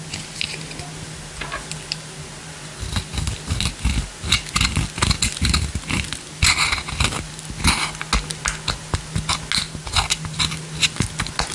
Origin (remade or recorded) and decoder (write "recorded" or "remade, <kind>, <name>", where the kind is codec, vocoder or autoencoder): recorded